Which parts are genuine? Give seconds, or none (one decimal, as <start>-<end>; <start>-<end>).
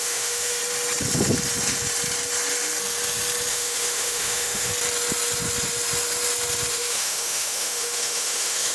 0.6-3.5; 4.7-6.7